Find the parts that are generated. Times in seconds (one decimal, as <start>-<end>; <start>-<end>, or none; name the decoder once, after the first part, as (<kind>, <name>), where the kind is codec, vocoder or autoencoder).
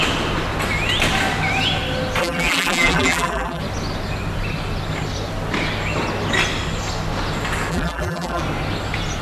2.2-3.6 (vocoder, BigVGAN v2); 7.7-8.4